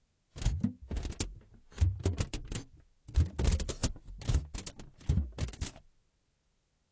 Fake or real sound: real